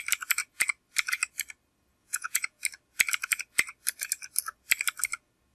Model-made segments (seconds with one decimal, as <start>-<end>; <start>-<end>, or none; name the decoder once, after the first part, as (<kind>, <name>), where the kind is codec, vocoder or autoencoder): 2.0-2.6 (vocoder, Vocos)